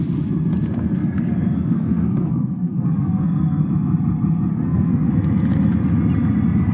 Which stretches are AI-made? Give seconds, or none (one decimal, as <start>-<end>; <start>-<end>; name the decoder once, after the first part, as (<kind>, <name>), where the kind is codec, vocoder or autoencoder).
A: 1.0-3.7 (codec, SNAC); 4.5-5.1